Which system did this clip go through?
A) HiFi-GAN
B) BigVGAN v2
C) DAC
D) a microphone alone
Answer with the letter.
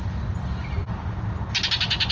D